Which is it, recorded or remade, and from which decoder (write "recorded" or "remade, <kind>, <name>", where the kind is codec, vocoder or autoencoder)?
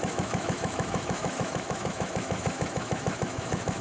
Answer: remade, autoencoder, DAC-VAE